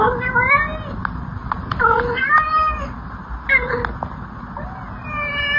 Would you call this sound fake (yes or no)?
no